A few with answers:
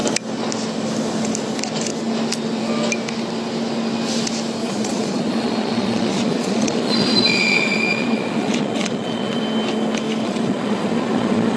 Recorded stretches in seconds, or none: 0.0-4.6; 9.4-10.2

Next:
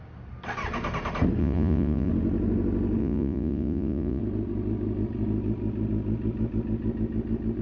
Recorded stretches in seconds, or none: 0.0-1.4; 2.1-3.0; 4.2-7.6

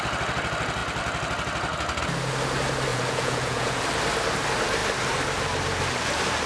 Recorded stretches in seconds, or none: 0.0-2.9; 3.8-6.5

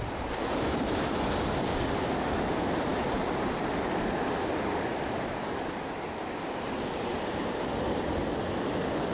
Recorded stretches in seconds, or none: 0.0-9.1

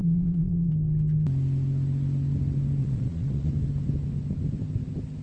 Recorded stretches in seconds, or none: 0.7-2.8; 3.5-5.2

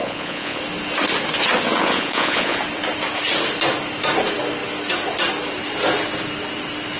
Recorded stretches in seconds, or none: 0.6-1.8; 2.6-7.0